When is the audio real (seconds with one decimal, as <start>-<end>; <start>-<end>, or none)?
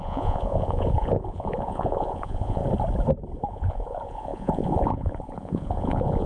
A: 2.6-3.5